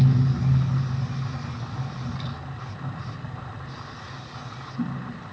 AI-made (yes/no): no